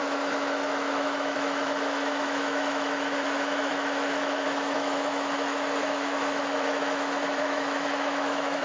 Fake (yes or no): yes